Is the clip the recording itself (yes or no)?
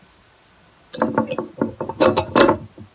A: yes